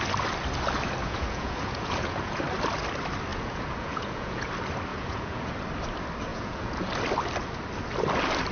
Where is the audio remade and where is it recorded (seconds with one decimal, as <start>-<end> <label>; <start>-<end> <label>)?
0.0-1.0 recorded; 1.0-2.4 remade; 2.4-3.3 recorded; 3.3-4.5 remade; 4.5-4.9 recorded; 4.9-5.5 remade; 5.5-6.3 recorded; 6.3-6.9 remade; 6.9-8.5 recorded